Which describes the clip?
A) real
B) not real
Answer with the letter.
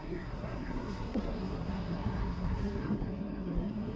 B